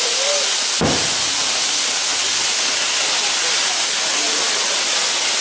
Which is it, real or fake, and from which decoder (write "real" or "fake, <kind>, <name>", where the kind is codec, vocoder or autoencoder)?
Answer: real